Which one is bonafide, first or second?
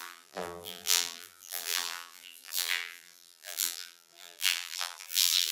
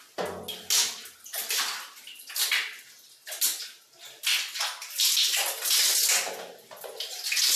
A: second